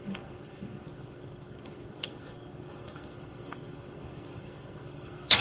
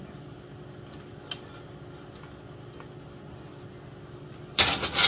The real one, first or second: second